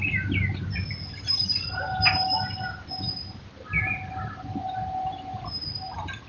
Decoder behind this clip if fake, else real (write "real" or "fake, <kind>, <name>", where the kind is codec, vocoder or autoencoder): real